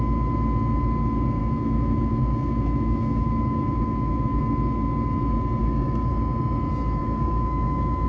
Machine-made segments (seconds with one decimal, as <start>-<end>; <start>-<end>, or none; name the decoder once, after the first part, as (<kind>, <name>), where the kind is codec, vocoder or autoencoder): 1.4-4.4 (autoencoder, DAC-VAE); 5.6-6.1; 7.0-8.1